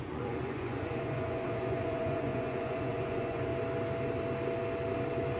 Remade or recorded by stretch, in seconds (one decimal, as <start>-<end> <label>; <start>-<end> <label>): 0.0-3.5 remade; 3.5-5.4 recorded